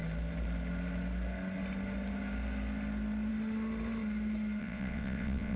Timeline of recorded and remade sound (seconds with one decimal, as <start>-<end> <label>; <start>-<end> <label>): 0.0-4.6 recorded; 4.6-5.6 remade